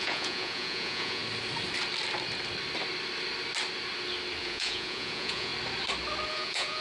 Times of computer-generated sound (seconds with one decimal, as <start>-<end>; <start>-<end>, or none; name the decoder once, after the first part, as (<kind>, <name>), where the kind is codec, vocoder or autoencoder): 0.0-1.2 (vocoder, Vocos); 4.4-5.5; 6.3-6.8